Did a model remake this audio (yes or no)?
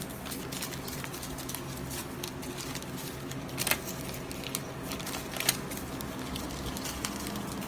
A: no